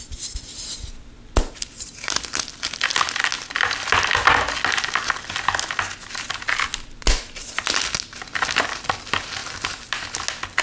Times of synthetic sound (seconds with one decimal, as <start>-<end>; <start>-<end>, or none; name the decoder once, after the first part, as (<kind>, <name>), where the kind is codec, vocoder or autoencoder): none

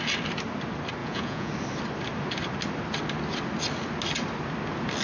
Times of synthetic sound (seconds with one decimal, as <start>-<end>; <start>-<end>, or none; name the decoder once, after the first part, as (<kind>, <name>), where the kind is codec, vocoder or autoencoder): 1.0-1.5 (vocoder, Vocos)

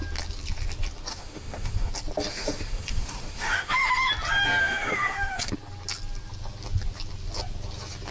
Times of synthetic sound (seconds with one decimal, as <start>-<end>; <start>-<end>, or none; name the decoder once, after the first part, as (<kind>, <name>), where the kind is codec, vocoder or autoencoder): 1.1-1.9 (autoencoder, DAC-VAE); 2.3-4.1; 4.6-5.5

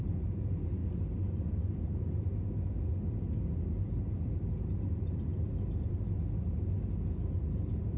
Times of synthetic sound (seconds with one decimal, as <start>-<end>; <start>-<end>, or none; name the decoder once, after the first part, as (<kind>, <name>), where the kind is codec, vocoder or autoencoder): none

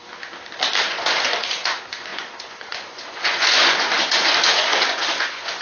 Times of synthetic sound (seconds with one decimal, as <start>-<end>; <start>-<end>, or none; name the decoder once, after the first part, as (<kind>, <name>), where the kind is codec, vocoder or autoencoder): 0.8-5.6 (vocoder, Vocos)

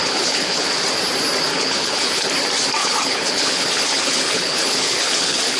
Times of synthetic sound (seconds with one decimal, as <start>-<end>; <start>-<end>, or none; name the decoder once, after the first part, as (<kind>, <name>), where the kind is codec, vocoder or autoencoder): 0.0-0.7 (codec, HILCodec); 1.5-2.3; 2.8-5.6

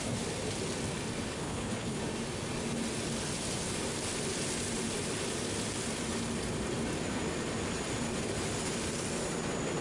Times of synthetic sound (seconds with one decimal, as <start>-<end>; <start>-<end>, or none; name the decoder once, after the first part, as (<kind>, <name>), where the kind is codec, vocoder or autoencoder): 1.4-2.0 (codec, HILCodec)